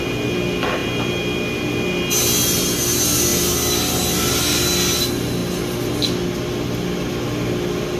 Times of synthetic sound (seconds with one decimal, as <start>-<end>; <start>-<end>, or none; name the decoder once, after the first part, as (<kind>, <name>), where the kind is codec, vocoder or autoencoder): none